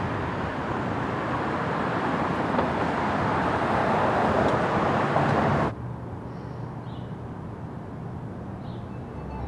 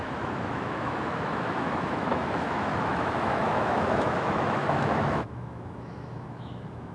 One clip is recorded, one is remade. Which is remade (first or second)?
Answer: second